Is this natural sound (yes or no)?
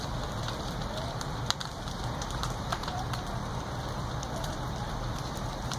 no